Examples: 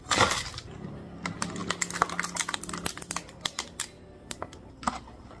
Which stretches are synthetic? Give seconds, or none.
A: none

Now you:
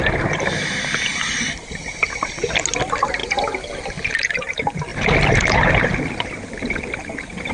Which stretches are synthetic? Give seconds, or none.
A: none

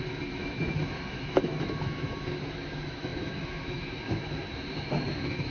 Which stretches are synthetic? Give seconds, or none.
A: 0.0-5.5 (autoencoder, DAC-VAE)

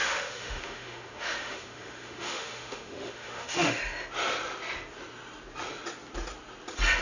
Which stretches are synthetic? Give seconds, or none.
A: 0.0-3.8 (autoencoder, DAC-VAE)

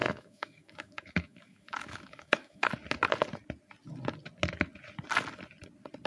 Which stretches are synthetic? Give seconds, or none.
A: 0.0-2.7 (autoencoder, DAC-VAE)

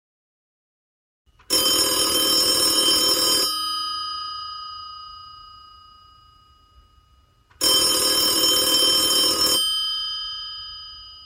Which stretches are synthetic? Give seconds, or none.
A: none

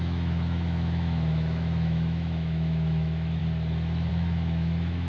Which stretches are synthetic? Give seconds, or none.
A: 0.0-3.4 (autoencoder, DAC-VAE); 4.1-5.1